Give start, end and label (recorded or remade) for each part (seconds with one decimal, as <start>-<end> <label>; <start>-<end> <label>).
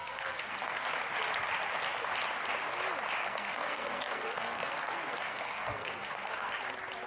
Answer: 0.0-0.9 remade; 0.9-3.2 recorded; 3.2-6.6 remade; 6.6-7.1 recorded